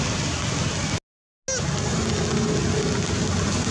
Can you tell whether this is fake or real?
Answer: real